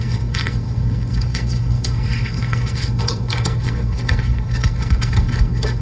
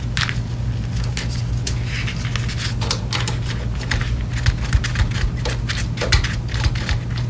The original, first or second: second